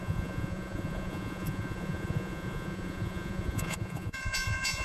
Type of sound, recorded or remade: remade